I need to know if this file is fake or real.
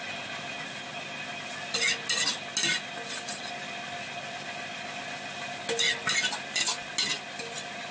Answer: real